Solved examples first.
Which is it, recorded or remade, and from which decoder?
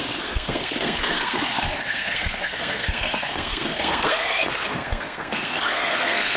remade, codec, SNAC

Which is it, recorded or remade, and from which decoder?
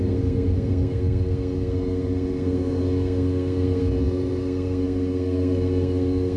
remade, codec, SNAC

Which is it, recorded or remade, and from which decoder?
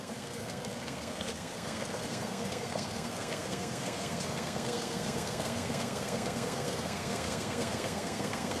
remade, codec, SNAC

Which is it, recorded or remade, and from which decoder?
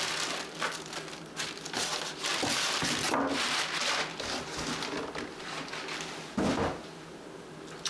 recorded